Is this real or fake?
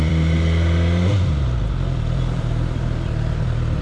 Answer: fake